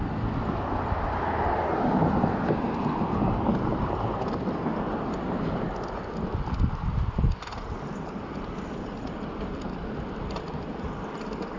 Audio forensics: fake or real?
real